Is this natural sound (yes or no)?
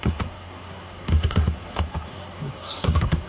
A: no